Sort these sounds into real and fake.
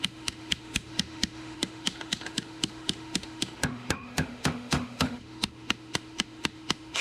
fake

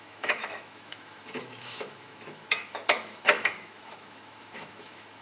fake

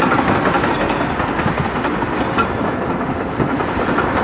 real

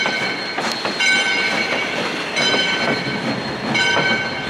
real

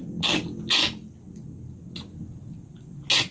real